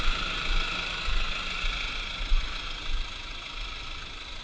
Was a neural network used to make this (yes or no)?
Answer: no